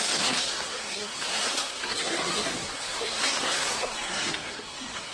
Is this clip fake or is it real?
fake